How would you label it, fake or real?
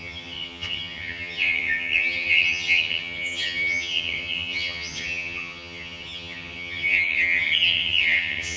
fake